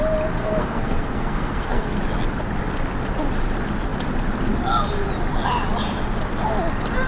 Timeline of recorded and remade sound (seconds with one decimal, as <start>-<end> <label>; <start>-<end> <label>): 0.0-0.4 recorded; 0.4-2.0 remade; 2.0-7.1 recorded